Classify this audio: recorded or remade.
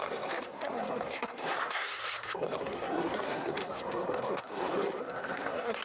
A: remade